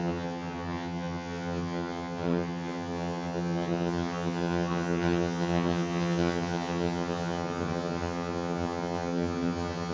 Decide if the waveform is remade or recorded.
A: remade